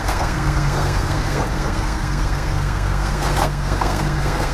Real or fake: fake